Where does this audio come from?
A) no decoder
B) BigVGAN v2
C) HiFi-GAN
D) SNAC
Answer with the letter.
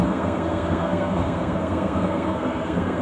D